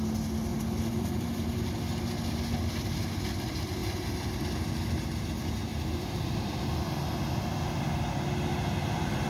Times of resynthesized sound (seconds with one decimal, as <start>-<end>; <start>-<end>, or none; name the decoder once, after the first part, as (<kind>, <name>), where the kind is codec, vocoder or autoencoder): 0.5-1.7 (vocoder, BigVGAN v2); 5.7-6.7; 8.5-9.3